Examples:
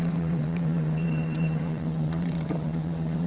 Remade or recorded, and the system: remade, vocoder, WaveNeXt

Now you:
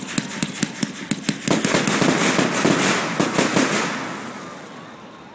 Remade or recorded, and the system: recorded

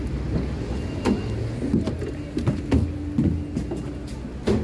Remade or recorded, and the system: recorded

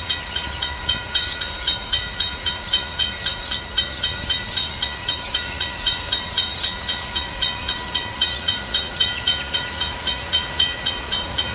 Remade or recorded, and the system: remade, vocoder, Vocos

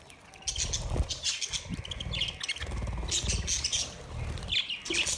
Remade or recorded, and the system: recorded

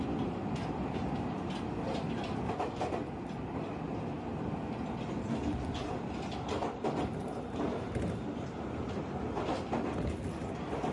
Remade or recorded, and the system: recorded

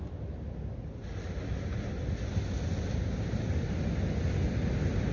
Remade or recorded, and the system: recorded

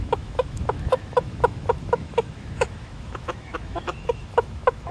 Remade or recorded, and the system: remade, autoencoder, DAC-VAE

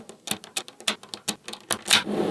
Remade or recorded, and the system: recorded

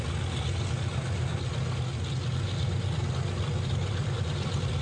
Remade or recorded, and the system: recorded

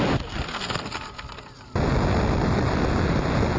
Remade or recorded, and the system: recorded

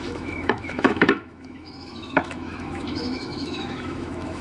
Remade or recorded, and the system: remade, autoencoder, DAC-VAE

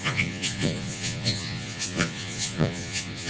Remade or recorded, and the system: remade, vocoder, Vocos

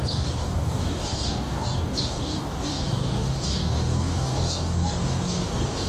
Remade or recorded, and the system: remade, codec, DAC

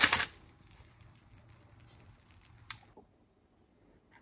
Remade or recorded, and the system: recorded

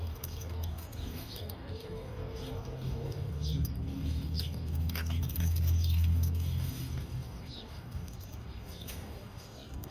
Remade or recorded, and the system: remade, codec, DAC